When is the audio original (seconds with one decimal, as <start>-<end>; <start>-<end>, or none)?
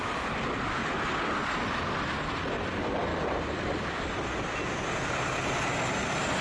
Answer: 0.0-0.8; 2.3-3.1; 4.2-6.4